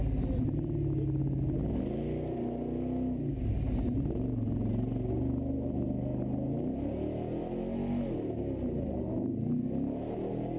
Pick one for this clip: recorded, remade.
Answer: recorded